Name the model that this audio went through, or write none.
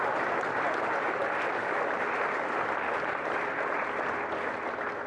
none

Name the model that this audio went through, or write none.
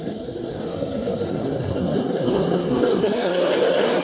codec, SNAC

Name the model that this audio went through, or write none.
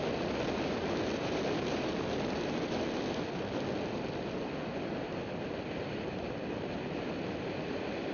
none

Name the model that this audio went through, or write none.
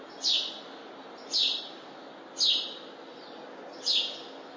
none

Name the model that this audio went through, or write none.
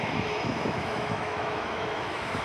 autoencoder, DAC-VAE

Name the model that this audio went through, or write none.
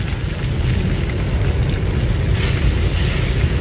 none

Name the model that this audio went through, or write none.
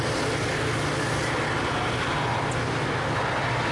none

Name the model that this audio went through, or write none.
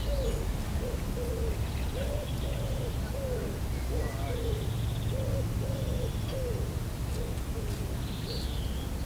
none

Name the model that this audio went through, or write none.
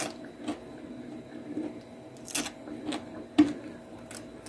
none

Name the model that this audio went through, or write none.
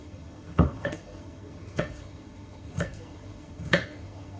codec, SNAC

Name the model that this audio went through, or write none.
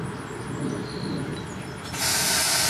none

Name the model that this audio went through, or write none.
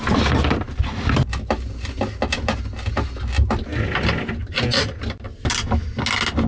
none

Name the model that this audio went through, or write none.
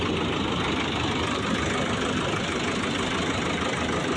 none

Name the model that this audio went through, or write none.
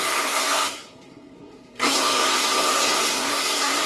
codec, SNAC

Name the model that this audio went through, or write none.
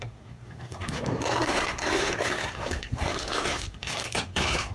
codec, SNAC